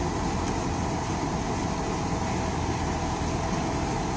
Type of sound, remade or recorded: recorded